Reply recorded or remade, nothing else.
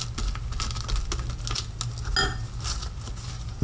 recorded